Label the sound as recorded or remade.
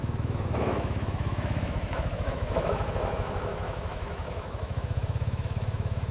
remade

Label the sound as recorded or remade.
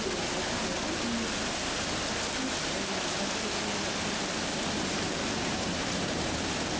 recorded